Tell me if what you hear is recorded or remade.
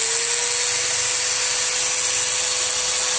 recorded